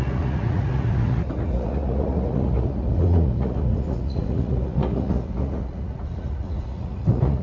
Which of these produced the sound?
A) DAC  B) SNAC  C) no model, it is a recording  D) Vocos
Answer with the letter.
D